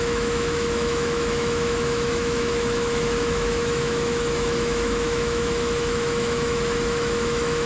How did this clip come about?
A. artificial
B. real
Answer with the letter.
A